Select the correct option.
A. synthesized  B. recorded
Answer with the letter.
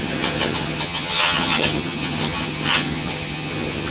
A